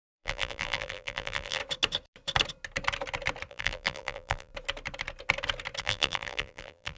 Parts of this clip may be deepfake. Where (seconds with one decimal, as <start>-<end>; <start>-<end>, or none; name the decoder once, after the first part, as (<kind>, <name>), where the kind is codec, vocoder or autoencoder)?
0.0-1.6 (vocoder, BigVGAN v2); 3.5-4.5; 5.8-7.0